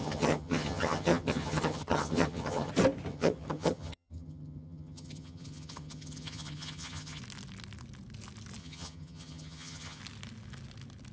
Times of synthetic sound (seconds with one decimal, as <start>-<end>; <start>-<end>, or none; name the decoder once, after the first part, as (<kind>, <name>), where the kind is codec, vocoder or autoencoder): 0.0-2.7 (vocoder, HiFi-GAN); 3.1-7.2; 8.6-10.0